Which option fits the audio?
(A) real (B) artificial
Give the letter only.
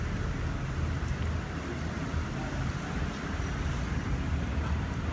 A